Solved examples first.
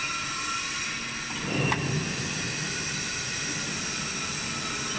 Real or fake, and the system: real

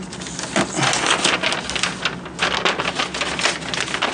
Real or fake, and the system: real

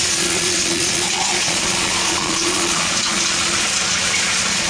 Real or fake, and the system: fake, vocoder, Vocos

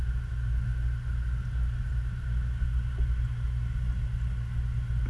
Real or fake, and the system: real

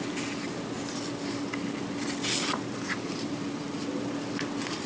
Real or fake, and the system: real